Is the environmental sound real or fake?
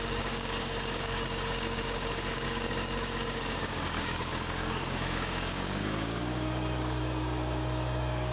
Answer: fake